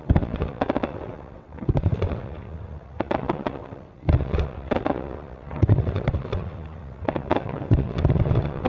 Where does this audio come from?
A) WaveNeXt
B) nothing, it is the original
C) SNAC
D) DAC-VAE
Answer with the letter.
A